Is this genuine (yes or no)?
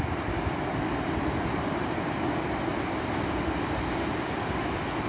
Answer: yes